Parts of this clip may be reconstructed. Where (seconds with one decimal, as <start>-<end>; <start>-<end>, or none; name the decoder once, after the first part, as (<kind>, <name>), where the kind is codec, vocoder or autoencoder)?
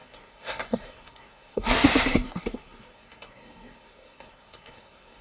0.0-5.2 (codec, SNAC)